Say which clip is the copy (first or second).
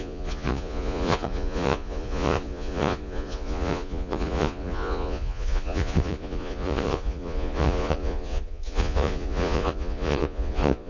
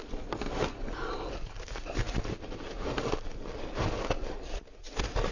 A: first